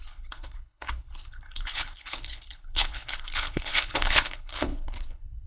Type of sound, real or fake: fake